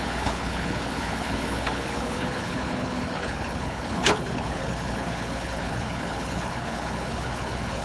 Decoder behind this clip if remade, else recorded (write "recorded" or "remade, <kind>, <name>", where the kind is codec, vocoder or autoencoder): remade, codec, HILCodec